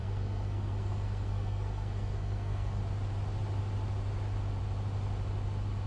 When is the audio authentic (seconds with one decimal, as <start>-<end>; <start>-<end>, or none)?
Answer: 2.8-5.9